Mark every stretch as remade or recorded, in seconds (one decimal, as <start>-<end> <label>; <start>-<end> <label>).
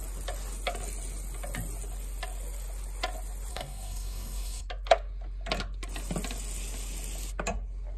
0.0-3.5 recorded; 3.5-4.7 remade; 4.7-8.0 recorded